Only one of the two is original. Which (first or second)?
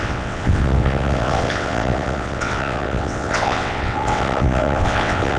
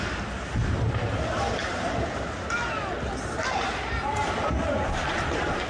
second